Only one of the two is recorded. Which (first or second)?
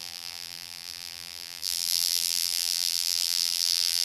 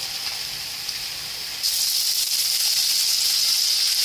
second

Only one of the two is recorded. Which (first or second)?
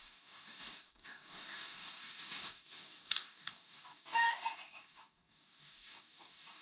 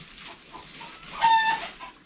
second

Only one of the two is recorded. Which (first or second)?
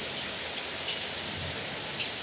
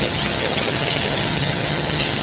first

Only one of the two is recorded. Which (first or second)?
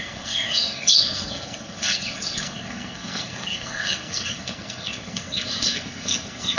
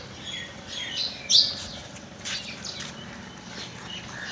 second